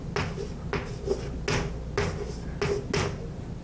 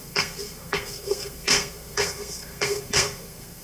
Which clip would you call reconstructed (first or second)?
second